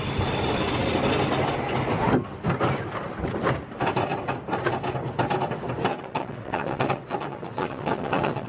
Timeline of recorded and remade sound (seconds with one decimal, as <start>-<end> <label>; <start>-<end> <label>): 0.0-5.9 recorded; 5.9-8.5 remade